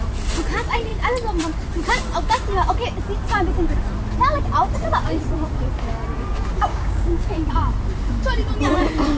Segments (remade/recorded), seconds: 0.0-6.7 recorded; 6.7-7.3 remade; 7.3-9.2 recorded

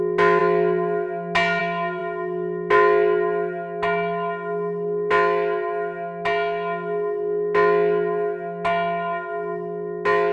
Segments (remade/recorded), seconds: 0.0-10.3 recorded